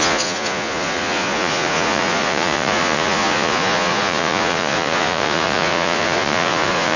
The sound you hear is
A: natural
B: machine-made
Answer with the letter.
B